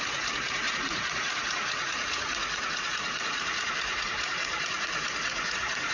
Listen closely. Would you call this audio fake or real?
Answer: fake